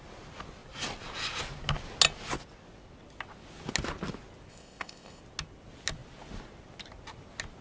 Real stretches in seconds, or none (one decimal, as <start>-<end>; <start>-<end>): 0.0-4.5; 5.2-7.6